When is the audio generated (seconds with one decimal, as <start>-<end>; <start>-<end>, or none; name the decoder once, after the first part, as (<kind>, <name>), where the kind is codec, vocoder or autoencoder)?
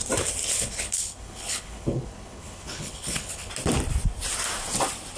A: 0.4-3.5 (codec, HILCodec)